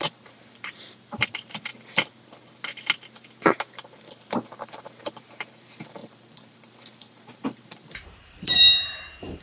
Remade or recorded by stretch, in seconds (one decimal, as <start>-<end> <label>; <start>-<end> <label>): 0.0-1.7 remade; 1.7-3.9 recorded; 3.9-9.4 remade